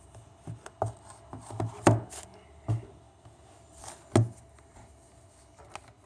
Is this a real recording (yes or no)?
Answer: yes